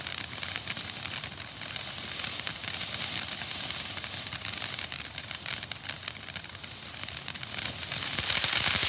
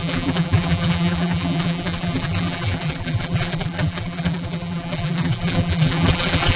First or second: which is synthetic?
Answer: second